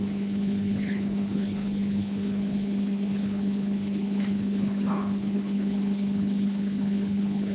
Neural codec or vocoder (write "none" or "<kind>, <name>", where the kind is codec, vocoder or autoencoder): codec, HILCodec